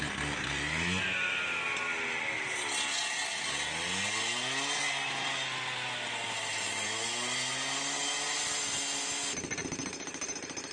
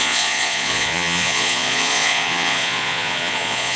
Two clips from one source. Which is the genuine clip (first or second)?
first